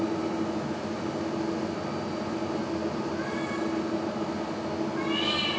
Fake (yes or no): no